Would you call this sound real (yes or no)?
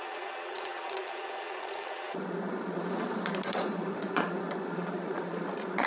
no